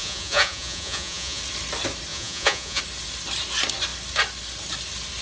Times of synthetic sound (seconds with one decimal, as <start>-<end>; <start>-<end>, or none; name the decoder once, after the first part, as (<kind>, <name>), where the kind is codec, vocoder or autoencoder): 0.0-1.4 (vocoder, Vocos); 2.1-2.8